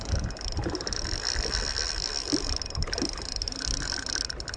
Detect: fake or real real